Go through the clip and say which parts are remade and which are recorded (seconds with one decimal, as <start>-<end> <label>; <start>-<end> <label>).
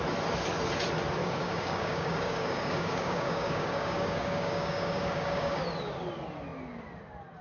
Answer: 0.0-1.2 recorded; 1.2-5.6 remade; 5.6-7.4 recorded